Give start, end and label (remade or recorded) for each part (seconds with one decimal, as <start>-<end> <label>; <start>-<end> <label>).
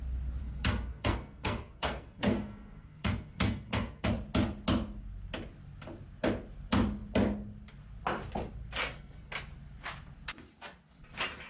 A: 0.0-0.4 recorded; 0.4-4.1 remade; 4.1-8.8 recorded; 8.8-9.3 remade; 9.3-11.5 recorded